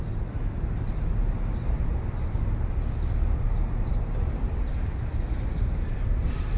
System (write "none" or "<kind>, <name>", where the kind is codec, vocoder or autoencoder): none